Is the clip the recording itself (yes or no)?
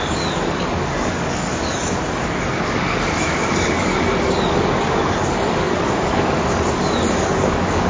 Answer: no